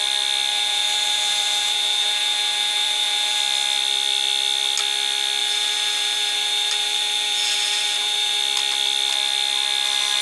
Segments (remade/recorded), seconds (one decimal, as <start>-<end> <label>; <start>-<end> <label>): 0.0-0.5 recorded; 0.5-3.4 remade; 3.4-5.4 recorded; 5.4-8.4 remade; 8.4-10.2 recorded